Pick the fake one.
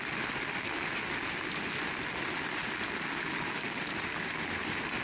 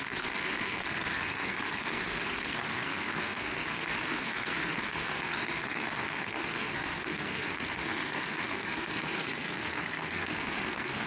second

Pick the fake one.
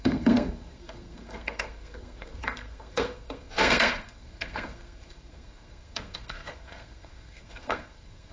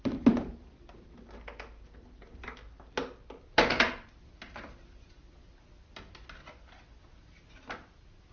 first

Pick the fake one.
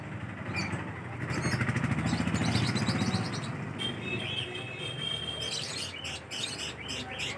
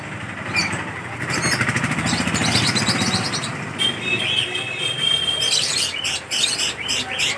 second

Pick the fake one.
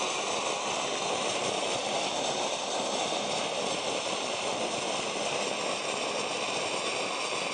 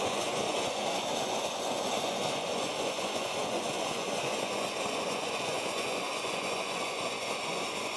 second